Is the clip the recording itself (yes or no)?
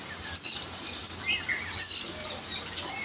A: yes